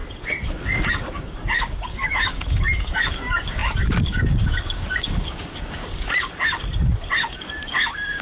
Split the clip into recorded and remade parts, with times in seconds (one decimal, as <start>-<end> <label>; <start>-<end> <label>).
0.0-0.9 recorded; 0.9-5.8 remade; 5.8-7.7 recorded; 7.7-8.2 remade